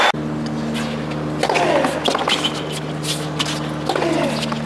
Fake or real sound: real